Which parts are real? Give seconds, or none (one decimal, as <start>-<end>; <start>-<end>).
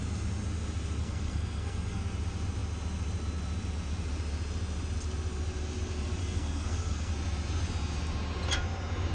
0.0-1.0; 2.0-6.2; 7.1-9.1